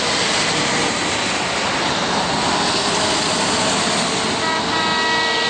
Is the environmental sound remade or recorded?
recorded